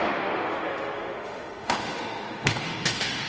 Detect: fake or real fake